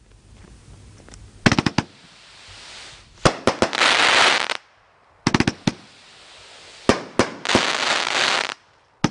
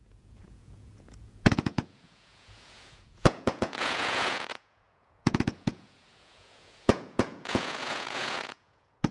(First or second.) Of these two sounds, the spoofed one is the second